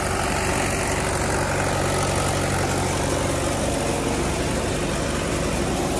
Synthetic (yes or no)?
no